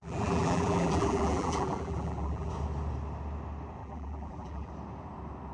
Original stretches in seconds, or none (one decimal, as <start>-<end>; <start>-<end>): 2.5-3.8; 4.7-5.5

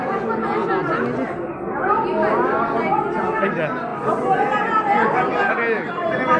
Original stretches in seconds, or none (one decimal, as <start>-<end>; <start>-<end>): 0.0-6.4

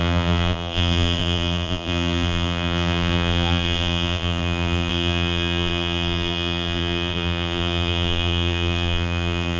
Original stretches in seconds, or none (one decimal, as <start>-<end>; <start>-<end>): none